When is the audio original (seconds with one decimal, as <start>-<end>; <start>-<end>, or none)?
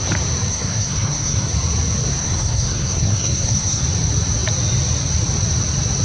0.0-0.5; 1.5-2.2; 3.8-6.0